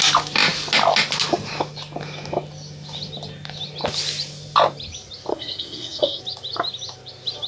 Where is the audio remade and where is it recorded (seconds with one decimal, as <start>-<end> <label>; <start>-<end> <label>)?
0.0-5.3 recorded; 5.3-6.2 remade; 6.2-7.5 recorded